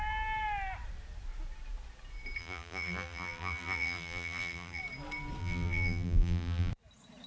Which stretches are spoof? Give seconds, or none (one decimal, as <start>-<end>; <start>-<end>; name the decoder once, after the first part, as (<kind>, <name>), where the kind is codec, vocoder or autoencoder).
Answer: 2.4-4.8 (vocoder, BigVGAN v2); 5.4-6.7